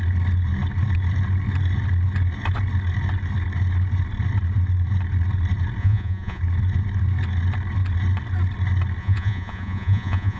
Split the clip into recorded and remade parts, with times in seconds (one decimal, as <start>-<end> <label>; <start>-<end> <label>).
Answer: 0.0-5.8 recorded; 5.8-6.4 remade; 6.4-9.0 recorded; 9.0-10.4 remade